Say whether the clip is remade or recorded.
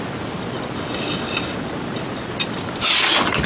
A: recorded